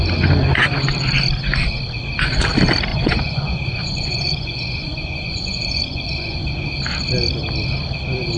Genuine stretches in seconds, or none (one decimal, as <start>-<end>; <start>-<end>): 0.0-2.9; 6.7-8.4